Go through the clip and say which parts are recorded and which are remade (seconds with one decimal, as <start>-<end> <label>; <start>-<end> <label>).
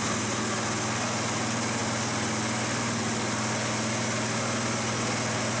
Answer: 0.0-5.6 recorded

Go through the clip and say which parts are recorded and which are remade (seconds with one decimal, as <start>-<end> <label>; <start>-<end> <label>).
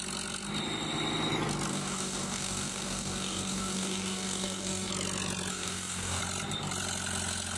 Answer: 0.0-1.7 recorded; 1.7-4.9 remade; 4.9-5.5 recorded; 5.5-6.2 remade; 6.2-7.6 recorded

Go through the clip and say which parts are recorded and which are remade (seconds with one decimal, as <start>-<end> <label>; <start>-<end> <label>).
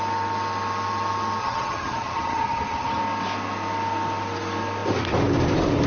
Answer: 0.0-1.4 recorded; 1.4-3.0 remade; 3.0-5.9 recorded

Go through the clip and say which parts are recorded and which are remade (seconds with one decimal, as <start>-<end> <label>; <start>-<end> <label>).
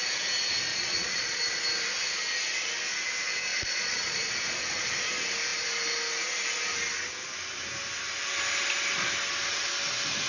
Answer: 0.0-0.7 recorded; 0.7-1.4 remade; 1.4-3.5 recorded; 3.5-4.3 remade; 4.3-10.3 recorded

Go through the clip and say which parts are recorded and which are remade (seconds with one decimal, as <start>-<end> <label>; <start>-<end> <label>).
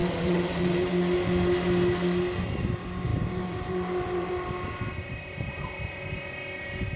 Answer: 0.0-0.9 remade; 0.9-3.1 recorded; 3.1-4.3 remade; 4.3-7.0 recorded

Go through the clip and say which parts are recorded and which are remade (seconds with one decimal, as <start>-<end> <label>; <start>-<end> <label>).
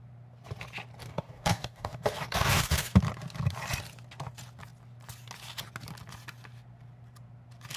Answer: 0.0-1.0 recorded; 1.0-3.0 remade; 3.0-7.8 recorded